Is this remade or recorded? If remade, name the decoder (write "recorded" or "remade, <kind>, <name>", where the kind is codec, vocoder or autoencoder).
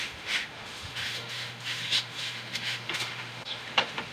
remade, autoencoder, DAC-VAE